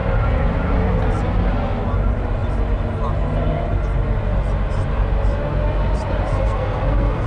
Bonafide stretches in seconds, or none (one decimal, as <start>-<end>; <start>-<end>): 0.0-6.3